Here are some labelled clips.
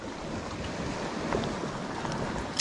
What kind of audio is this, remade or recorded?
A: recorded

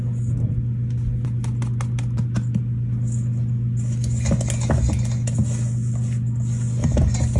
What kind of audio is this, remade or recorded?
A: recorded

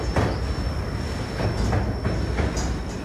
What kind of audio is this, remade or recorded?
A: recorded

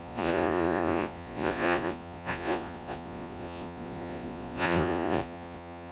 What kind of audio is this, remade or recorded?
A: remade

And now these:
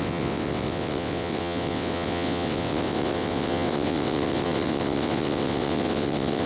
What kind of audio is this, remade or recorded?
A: remade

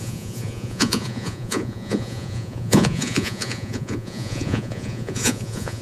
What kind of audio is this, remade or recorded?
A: remade